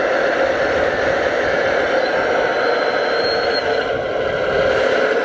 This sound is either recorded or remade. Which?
recorded